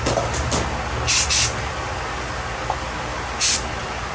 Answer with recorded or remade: recorded